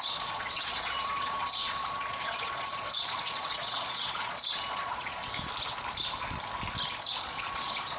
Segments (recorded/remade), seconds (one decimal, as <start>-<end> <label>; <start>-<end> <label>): 0.0-5.2 remade; 5.2-7.1 recorded; 7.1-8.0 remade